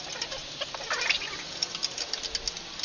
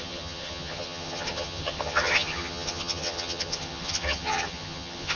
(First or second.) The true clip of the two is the first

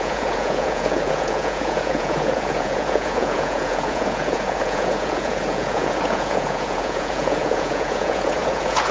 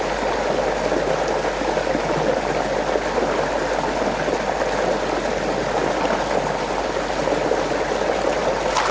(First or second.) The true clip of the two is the second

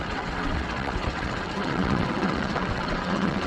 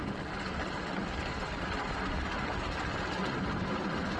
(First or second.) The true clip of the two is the second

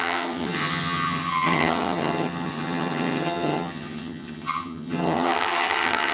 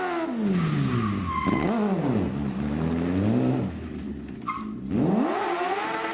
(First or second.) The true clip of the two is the second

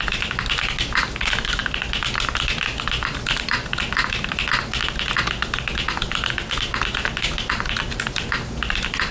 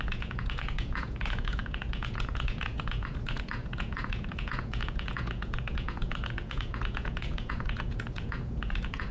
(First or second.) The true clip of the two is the first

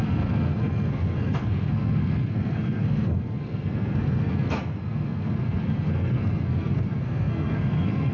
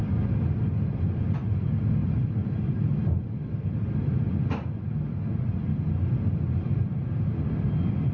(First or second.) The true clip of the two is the second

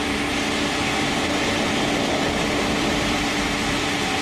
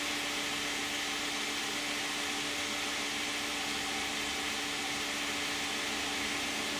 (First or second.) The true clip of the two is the second